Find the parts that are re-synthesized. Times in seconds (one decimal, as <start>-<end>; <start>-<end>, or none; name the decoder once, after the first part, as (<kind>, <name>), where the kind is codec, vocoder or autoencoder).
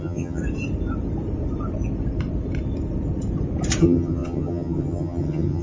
0.0-0.4 (vocoder, HiFi-GAN); 3.8-5.6